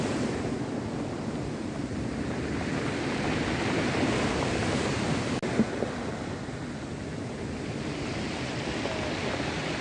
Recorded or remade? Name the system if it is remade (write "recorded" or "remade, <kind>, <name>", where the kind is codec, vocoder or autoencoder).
recorded